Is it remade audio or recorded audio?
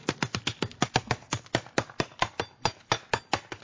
recorded